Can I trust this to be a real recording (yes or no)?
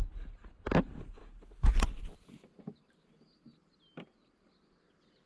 yes